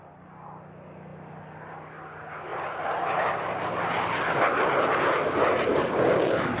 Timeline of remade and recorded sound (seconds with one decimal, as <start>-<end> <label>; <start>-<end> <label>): 0.0-5.7 recorded; 5.7-6.6 remade

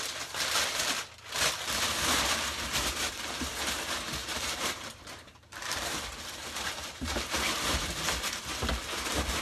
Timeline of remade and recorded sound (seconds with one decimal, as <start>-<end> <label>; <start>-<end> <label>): 0.0-4.2 recorded; 4.2-7.8 remade; 7.8-9.4 recorded